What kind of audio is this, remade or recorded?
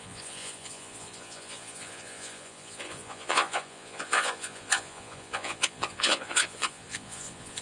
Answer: remade